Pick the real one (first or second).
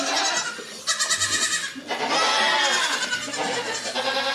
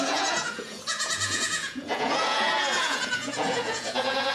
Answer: first